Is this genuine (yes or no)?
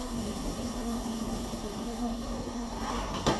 no